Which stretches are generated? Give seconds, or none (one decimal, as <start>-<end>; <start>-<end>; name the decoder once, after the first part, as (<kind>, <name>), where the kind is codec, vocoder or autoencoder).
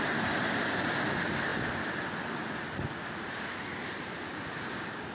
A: none